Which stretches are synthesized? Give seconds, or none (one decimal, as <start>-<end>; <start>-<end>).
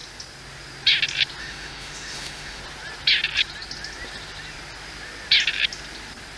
1.4-2.6